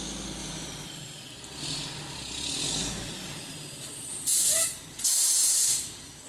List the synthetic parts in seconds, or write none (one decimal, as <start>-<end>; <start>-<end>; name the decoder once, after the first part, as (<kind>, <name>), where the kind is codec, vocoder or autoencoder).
0.4-1.2 (vocoder, BigVGAN v2); 2.8-6.3